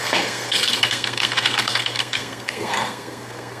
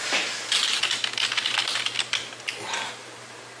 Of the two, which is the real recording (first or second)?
second